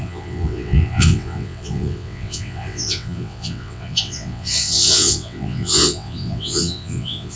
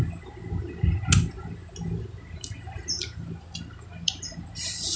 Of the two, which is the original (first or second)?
second